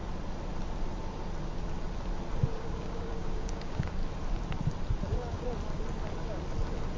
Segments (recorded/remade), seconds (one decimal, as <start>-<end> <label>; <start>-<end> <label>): 0.0-2.5 recorded; 2.5-4.0 remade; 4.0-7.0 recorded